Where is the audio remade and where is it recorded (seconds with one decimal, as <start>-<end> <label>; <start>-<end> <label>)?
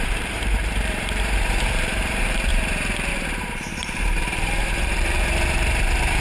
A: 0.0-2.5 remade; 2.5-3.1 recorded; 3.1-6.2 remade